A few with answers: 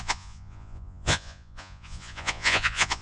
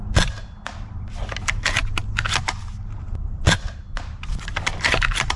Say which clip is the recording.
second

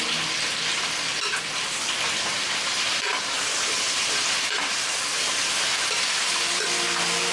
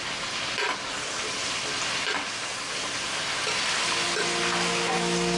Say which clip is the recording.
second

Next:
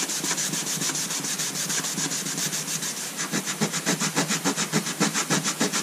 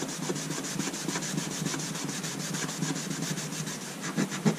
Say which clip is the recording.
second